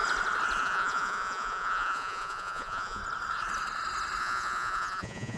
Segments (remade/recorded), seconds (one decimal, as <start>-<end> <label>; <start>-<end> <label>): 0.0-0.6 recorded; 0.6-3.0 remade; 3.0-4.2 recorded; 4.2-5.4 remade